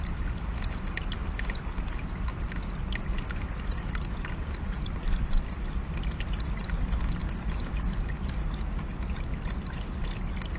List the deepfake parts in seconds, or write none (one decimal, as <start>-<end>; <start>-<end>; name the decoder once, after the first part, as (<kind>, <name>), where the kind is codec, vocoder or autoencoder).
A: none